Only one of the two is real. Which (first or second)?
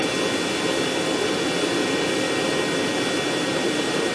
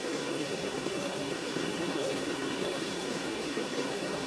first